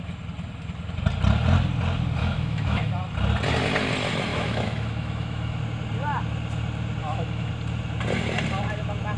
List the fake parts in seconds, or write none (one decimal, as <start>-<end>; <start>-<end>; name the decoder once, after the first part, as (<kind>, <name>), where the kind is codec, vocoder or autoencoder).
2.2-2.9 (autoencoder, DAC-VAE); 4.3-5.6; 7.0-7.5